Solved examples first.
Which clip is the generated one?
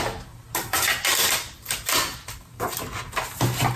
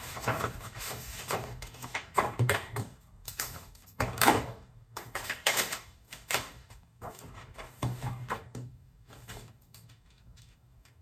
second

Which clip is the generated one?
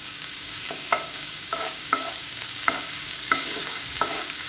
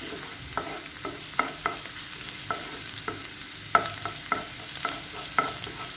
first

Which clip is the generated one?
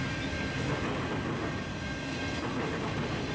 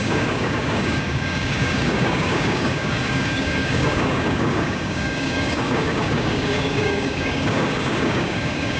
second